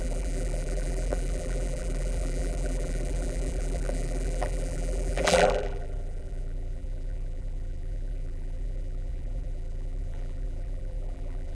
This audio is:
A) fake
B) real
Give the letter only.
A